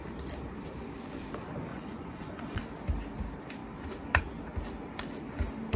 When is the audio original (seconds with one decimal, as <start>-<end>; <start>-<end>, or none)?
0.0-1.7; 2.6-5.8